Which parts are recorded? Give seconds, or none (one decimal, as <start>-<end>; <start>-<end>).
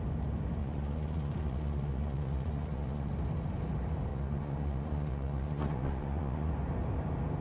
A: 0.0-0.6; 3.1-4.1; 6.5-7.4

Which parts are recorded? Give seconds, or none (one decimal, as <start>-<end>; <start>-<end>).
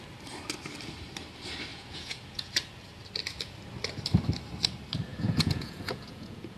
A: 0.0-1.7; 2.5-5.1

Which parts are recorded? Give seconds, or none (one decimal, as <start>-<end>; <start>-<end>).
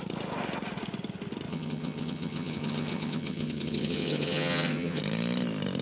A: 0.0-1.5; 5.0-5.8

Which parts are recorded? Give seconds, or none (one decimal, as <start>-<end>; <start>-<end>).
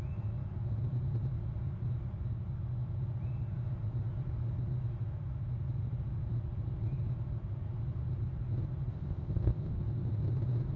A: 0.0-8.9; 9.7-10.8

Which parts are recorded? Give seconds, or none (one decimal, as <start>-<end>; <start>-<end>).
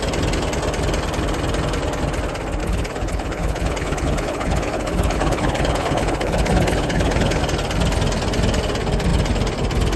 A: 0.0-2.6; 7.4-10.0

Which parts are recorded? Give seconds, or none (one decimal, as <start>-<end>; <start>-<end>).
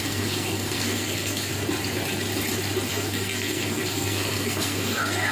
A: 1.5-2.9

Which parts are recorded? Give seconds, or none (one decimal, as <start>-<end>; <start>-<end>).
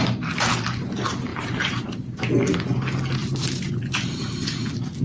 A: 0.0-1.3; 2.1-3.2; 3.7-5.0